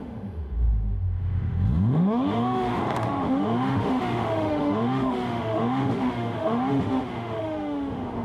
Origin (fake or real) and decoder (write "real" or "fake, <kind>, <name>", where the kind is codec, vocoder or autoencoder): fake, autoencoder, DAC-VAE